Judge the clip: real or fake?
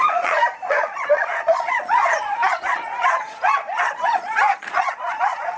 fake